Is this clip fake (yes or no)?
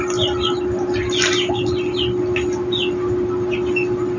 no